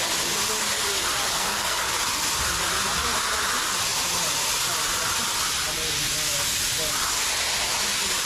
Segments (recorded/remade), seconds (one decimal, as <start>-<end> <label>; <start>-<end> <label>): 0.0-1.2 recorded; 1.2-1.9 remade; 1.9-8.3 recorded

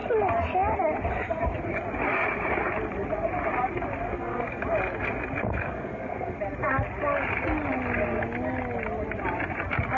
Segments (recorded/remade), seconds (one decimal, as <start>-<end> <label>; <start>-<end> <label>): 0.0-4.1 recorded; 4.1-4.6 remade; 4.6-5.4 recorded; 5.4-6.4 remade; 6.4-10.0 recorded

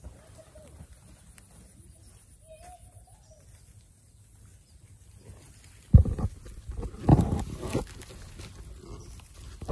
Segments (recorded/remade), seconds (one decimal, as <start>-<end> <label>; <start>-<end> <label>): 0.0-9.7 recorded

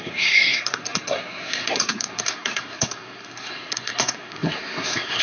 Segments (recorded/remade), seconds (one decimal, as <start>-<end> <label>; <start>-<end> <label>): 0.0-5.2 remade